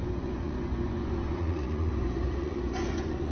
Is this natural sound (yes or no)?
no